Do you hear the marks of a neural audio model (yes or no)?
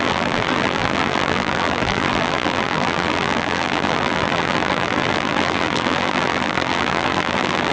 yes